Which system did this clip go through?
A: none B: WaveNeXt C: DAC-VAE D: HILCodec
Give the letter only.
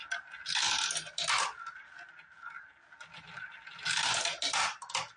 A